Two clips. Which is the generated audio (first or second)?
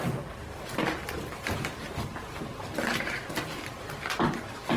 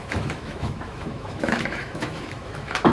second